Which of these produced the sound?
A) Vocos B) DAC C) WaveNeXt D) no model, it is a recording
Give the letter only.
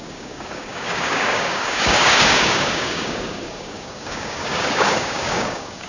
B